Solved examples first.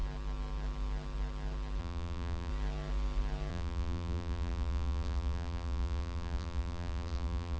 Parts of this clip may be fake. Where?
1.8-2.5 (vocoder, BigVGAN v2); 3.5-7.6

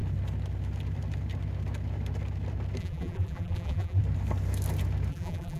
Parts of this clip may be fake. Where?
2.8-4.0 (vocoder, BigVGAN v2); 5.1-5.6

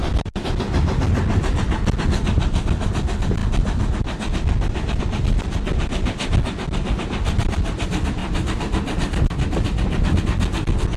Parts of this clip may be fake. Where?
8.2-10.2 (vocoder, BigVGAN v2)